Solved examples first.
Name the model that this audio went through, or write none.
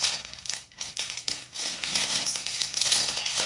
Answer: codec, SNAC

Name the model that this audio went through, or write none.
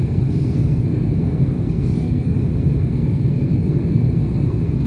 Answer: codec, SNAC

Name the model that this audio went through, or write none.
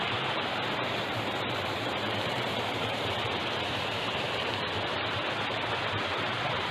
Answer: vocoder, BigVGAN v2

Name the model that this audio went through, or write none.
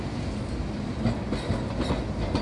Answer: none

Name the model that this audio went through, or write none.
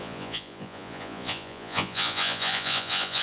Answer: vocoder, Vocos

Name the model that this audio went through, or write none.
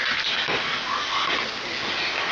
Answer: none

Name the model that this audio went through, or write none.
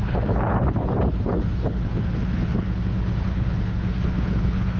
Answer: codec, HILCodec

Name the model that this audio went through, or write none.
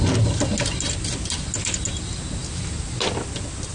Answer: none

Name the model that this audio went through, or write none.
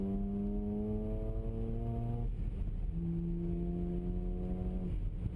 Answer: none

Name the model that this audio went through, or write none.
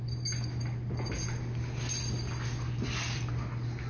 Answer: none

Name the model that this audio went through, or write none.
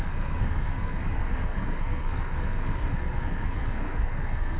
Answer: codec, SNAC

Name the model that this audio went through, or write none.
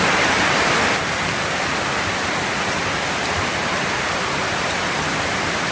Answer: none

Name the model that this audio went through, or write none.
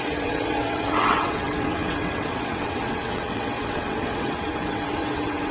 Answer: vocoder, WaveNeXt